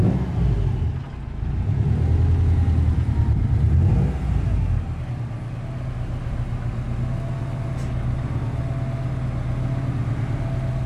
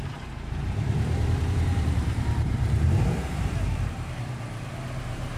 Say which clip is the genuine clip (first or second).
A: first